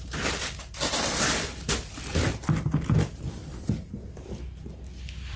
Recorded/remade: recorded